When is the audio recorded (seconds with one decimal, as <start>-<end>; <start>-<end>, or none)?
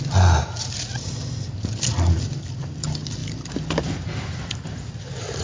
0.0-5.4